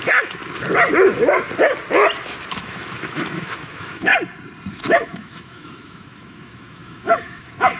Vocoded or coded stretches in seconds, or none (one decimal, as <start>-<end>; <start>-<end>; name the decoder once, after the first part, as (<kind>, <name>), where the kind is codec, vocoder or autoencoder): 0.0-0.4 (autoencoder, DAC-VAE); 2.5-4.1; 4.7-7.8